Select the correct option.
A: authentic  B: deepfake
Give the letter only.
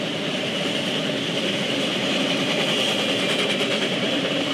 B